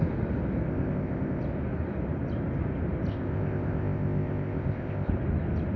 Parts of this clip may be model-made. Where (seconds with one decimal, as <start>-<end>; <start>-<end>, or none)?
0.7-1.4; 3.1-5.1